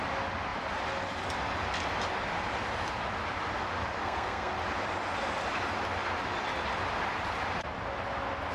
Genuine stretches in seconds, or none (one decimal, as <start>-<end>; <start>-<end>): 0.0-4.0; 4.5-8.5